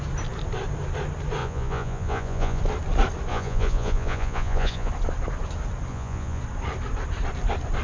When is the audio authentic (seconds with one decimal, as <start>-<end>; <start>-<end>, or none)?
0.0-1.4; 2.6-3.3; 4.9-5.9; 6.4-7.8